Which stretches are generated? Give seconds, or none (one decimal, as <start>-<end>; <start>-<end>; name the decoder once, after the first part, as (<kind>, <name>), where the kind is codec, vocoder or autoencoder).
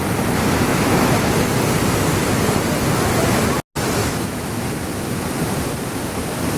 0.7-1.4 (autoencoder, DAC-VAE); 4.0-5.2